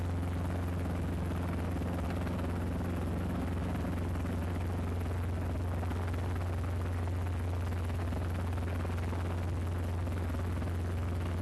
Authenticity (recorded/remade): recorded